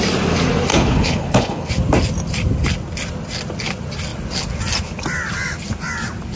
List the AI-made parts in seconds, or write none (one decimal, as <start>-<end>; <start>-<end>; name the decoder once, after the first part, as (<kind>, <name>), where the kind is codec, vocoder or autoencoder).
0.7-1.7 (codec, HILCodec)